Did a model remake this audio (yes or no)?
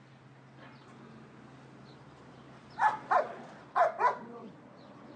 no